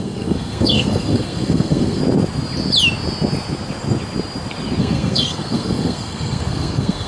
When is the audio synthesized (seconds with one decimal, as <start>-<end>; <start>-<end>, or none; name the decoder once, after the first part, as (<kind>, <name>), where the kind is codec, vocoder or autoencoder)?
0.0-2.0 (codec, SNAC); 4.8-7.1